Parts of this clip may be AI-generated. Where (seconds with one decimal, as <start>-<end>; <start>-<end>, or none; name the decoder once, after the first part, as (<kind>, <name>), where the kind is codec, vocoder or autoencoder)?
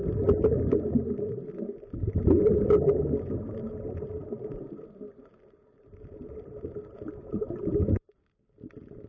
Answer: none